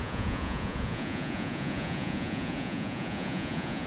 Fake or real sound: fake